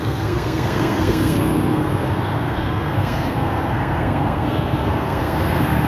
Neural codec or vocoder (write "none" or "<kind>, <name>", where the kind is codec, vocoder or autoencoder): codec, SNAC